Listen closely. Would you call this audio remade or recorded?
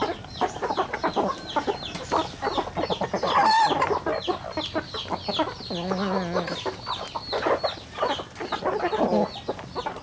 recorded